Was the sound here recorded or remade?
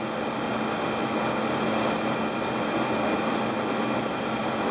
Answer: recorded